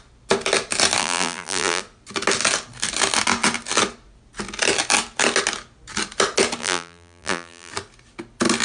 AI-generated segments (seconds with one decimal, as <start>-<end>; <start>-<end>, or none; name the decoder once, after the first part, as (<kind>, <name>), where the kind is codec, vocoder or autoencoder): 1.0-1.8 (vocoder, BigVGAN v2); 6.6-7.7